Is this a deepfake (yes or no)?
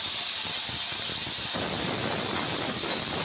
no